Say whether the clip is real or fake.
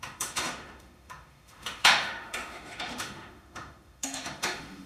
fake